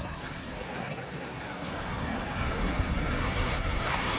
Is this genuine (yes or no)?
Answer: no